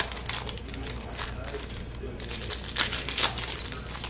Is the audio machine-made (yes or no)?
no